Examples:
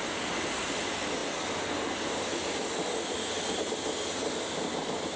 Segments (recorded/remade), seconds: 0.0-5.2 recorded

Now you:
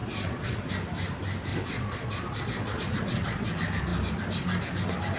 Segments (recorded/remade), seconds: 0.0-0.7 remade; 0.7-1.5 recorded; 1.5-3.5 remade; 3.5-5.2 recorded

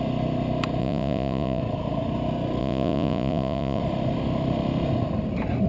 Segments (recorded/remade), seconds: 0.0-0.8 recorded; 0.8-1.6 remade; 1.6-2.6 recorded; 2.6-3.8 remade; 3.8-5.7 recorded

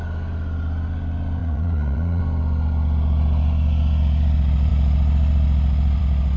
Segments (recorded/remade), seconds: 0.0-1.4 recorded; 1.4-2.2 remade; 2.2-6.4 recorded

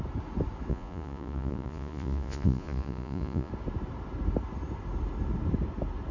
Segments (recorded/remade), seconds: 0.0-0.7 recorded; 0.7-3.5 remade; 3.5-6.1 recorded